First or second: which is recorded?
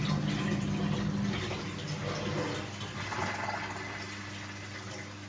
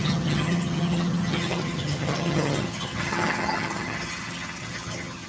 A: first